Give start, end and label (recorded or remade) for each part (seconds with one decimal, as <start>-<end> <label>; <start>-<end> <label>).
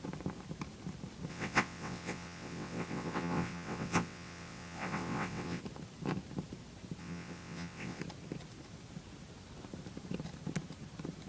0.0-1.3 recorded; 1.3-5.6 remade; 5.6-7.0 recorded; 7.0-8.0 remade; 8.0-11.3 recorded